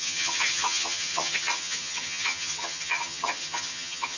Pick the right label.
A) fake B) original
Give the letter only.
A